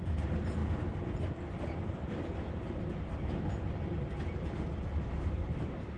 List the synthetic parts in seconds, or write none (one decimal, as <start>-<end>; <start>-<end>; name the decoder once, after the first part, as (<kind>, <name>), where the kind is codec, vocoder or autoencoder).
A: none